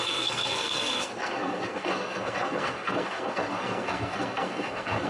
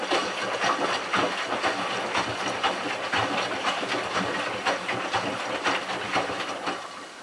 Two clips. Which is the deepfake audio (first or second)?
first